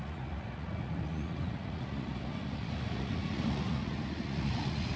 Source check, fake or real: fake